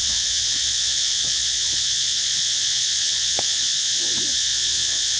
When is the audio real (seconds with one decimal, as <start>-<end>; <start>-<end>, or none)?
none